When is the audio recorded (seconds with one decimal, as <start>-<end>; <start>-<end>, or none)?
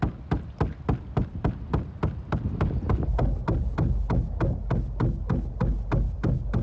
0.0-6.6